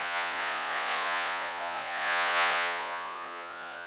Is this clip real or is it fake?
fake